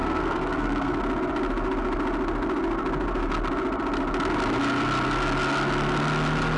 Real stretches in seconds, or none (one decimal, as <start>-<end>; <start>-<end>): 1.0-6.6